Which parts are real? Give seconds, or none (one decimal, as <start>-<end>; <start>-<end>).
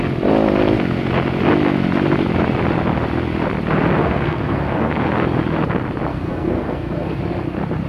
0.0-4.0; 4.9-6.1; 7.2-7.9